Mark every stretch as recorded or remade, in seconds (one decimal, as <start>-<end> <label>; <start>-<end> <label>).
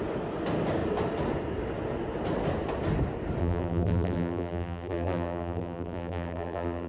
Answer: 0.0-3.4 recorded; 3.4-6.9 remade